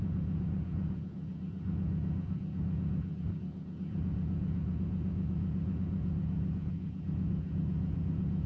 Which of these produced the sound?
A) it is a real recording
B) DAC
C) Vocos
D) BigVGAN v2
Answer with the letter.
C